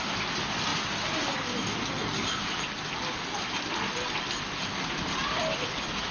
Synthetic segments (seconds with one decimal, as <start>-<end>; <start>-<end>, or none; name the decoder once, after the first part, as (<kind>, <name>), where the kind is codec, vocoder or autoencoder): none